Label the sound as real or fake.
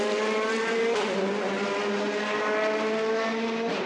real